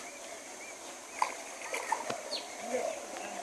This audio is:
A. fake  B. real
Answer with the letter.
B